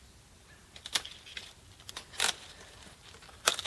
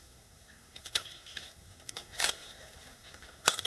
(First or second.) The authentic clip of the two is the first